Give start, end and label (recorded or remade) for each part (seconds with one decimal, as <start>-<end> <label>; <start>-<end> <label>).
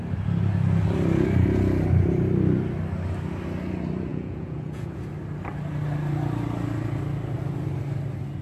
0.0-4.1 recorded; 4.1-5.0 remade; 5.0-8.4 recorded